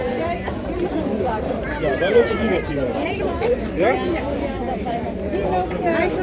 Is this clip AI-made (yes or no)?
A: yes